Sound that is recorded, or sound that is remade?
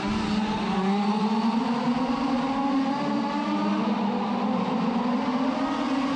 recorded